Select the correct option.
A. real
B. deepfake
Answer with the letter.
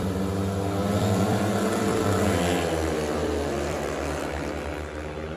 B